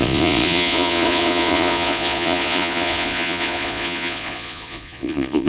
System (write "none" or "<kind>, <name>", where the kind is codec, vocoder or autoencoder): vocoder, Vocos